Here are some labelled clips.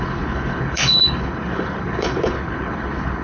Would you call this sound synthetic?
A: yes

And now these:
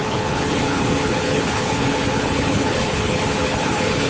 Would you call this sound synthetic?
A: yes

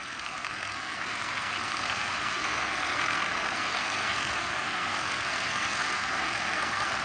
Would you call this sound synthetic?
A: yes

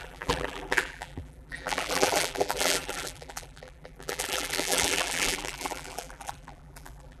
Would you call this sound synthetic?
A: yes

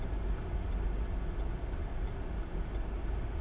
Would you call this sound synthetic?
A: no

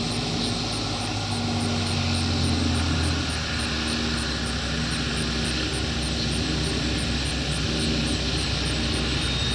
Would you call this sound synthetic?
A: no